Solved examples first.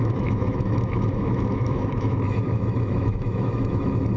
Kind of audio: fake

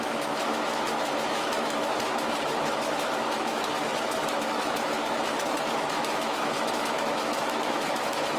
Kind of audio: fake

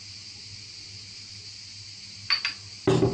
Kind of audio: real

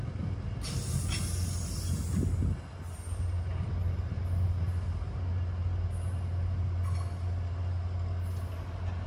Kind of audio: real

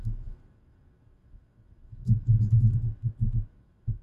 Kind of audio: fake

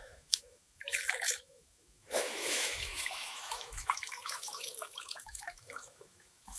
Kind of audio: fake